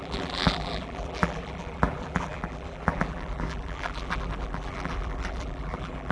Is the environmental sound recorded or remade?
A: remade